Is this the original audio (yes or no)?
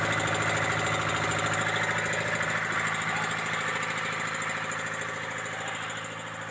yes